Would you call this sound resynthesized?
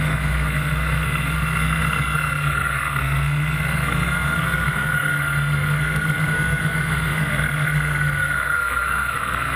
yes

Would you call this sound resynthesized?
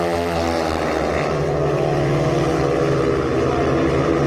no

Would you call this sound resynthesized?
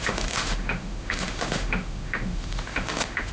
yes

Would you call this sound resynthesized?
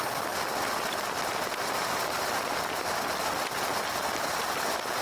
no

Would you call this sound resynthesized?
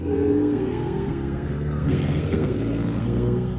yes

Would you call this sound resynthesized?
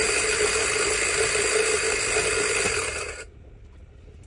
no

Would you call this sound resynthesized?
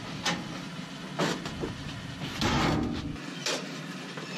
no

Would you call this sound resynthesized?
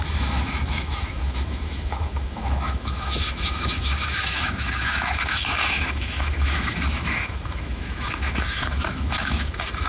yes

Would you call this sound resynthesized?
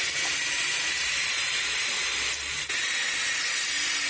no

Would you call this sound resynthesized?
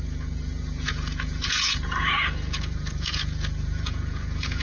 yes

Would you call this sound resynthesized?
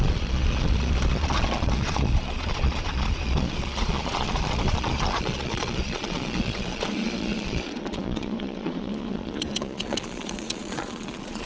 yes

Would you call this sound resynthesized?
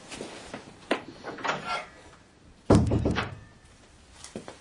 yes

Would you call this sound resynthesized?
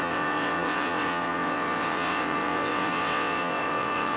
yes